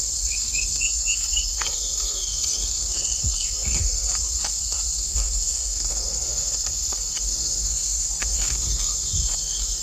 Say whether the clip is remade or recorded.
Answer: remade